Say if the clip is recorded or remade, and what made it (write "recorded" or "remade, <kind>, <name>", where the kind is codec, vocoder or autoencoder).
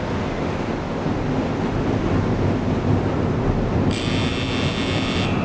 recorded